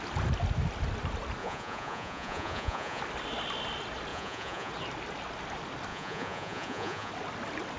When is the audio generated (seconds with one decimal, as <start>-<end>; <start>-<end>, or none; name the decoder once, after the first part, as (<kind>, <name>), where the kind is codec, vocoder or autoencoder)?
1.4-3.0 (vocoder, Vocos); 4.1-4.7; 5.9-7.1